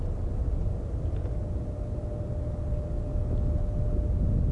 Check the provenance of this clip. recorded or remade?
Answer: recorded